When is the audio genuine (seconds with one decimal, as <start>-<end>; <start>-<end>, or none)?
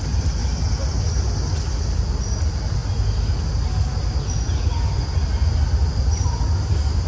0.0-7.1